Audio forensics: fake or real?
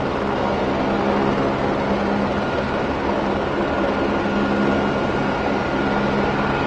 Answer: real